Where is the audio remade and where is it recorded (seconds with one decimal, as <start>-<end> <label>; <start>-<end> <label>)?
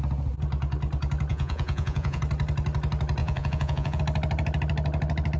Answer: 0.0-1.3 recorded; 1.3-2.2 remade; 2.2-3.2 recorded; 3.2-4.0 remade; 4.0-5.4 recorded